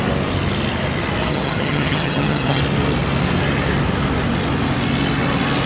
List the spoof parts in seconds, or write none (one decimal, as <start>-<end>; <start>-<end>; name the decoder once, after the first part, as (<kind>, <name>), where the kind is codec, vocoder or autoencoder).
1.2-2.6 (vocoder, HiFi-GAN)